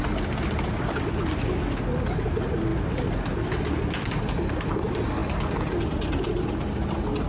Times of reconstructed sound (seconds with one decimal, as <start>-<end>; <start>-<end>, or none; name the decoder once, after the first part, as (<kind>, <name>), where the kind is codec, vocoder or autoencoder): none